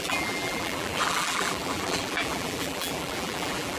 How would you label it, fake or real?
fake